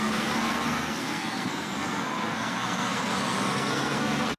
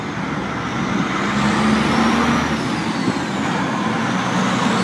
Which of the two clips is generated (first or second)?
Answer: first